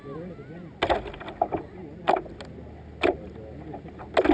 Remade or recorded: recorded